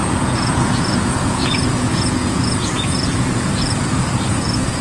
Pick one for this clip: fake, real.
fake